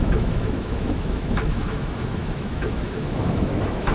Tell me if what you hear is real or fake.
fake